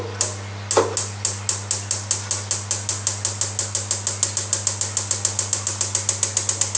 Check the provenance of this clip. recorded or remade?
recorded